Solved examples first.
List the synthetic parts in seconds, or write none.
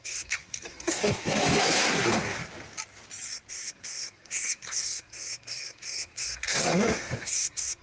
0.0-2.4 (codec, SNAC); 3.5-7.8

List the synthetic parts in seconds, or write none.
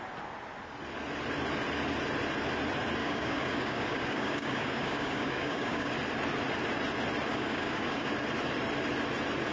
3.0-5.9 (codec, DAC); 7.3-8.1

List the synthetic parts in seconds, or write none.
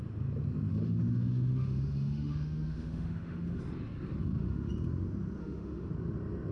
0.7-3.6 (autoencoder, DAC-VAE); 4.2-4.7; 5.4-5.9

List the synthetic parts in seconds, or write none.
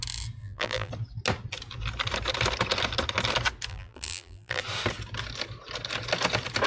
0.4-0.9 (vocoder, BigVGAN v2); 3.7-4.6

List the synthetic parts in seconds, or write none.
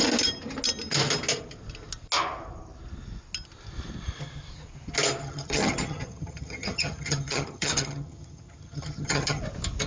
5.2-9.4 (vocoder, HiFi-GAN)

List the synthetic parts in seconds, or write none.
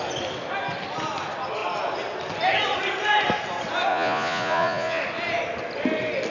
3.9-5.0 (vocoder, Vocos)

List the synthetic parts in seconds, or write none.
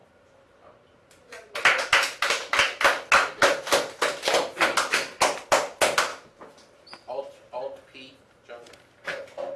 none